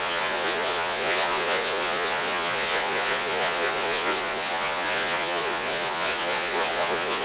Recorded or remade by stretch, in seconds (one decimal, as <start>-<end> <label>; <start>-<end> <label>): 0.0-7.2 remade